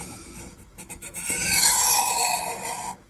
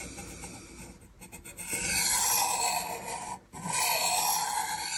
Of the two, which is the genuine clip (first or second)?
second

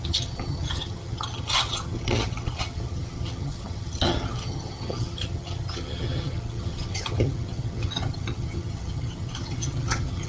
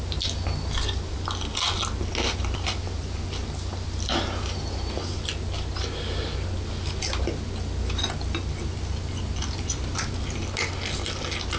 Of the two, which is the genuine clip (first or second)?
second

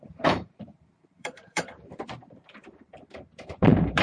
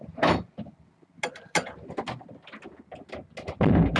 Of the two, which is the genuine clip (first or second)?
second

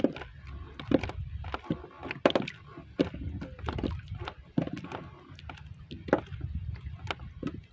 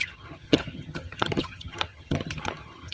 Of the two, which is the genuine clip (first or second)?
first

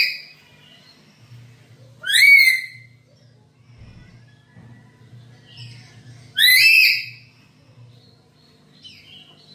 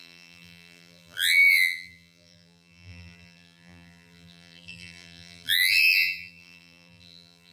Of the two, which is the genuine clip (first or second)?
first